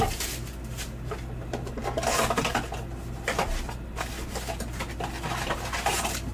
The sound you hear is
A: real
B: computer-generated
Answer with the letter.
A